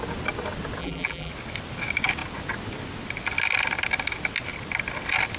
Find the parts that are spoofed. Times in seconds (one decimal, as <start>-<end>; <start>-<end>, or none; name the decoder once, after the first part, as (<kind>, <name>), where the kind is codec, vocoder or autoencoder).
0.8-1.3 (vocoder, BigVGAN v2)